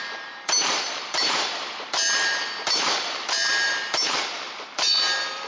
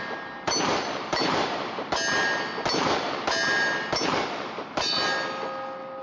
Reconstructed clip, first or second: first